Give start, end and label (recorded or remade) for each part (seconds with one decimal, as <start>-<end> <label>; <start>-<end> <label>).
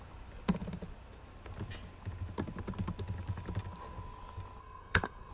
0.0-4.6 recorded; 4.6-5.3 remade